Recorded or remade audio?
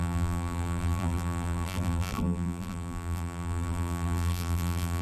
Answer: remade